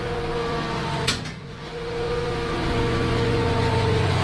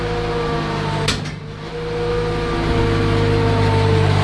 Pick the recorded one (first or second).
second